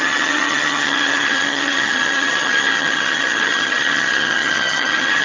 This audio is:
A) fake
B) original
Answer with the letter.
A